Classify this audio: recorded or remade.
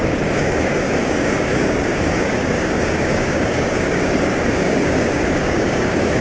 remade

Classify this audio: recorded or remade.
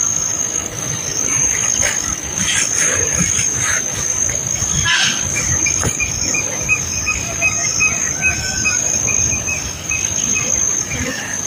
remade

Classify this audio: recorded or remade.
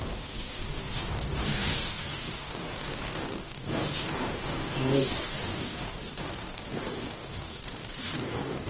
remade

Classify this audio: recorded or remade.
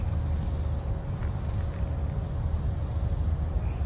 recorded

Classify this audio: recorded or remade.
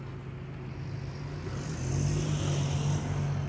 recorded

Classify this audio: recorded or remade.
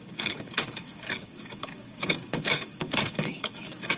remade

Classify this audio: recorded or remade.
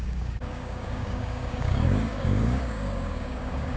remade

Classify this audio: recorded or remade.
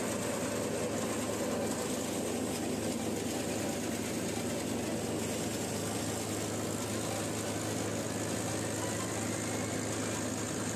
recorded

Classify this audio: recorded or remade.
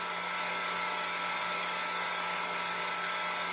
remade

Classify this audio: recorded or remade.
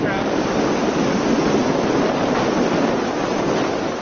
recorded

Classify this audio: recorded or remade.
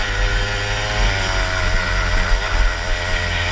recorded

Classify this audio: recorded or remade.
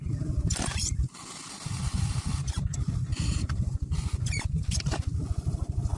recorded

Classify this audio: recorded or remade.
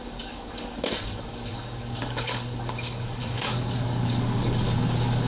remade